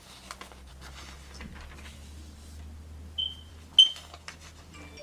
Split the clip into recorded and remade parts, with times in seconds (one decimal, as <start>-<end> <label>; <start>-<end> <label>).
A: 0.0-5.0 recorded